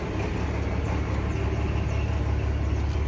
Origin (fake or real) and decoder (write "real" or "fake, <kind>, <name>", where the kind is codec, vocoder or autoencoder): real